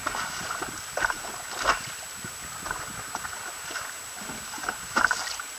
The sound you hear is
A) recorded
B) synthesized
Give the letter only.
A